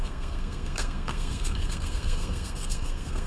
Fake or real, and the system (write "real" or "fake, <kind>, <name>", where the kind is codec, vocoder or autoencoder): fake, codec, SNAC